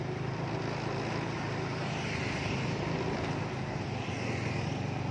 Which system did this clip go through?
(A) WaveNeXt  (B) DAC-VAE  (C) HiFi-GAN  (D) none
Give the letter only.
D